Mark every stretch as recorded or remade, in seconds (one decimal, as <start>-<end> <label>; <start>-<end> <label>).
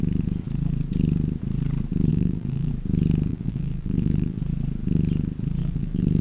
0.0-2.1 recorded; 2.1-2.7 remade; 2.7-3.3 recorded; 3.3-4.4 remade; 4.4-5.6 recorded; 5.6-6.2 remade